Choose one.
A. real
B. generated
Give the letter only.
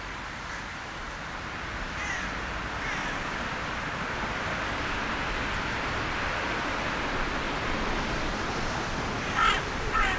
A